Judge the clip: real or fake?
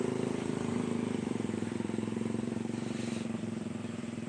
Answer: fake